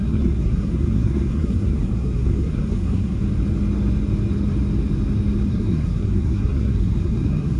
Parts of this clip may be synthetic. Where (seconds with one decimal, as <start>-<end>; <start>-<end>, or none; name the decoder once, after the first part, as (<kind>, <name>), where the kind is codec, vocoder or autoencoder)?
0.0-3.2 (codec, SNAC); 5.5-7.6